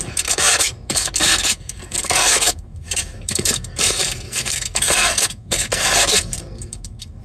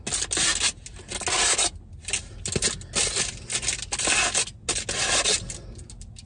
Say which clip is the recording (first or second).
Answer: second